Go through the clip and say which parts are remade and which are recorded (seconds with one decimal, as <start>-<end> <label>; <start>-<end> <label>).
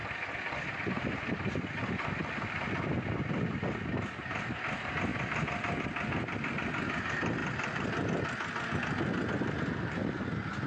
0.0-2.3 remade; 2.3-5.1 recorded; 5.1-6.5 remade; 6.5-10.7 recorded